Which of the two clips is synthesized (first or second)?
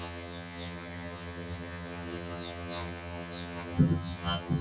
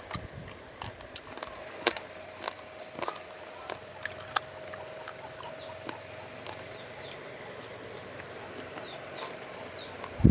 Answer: first